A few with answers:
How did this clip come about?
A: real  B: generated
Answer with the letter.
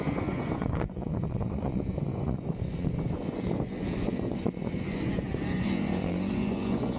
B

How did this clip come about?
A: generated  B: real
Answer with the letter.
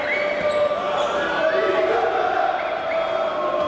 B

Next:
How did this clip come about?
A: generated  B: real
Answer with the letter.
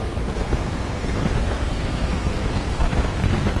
A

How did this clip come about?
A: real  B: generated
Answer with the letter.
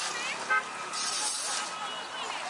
A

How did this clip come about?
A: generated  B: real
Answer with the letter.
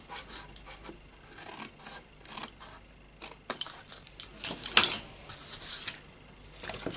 B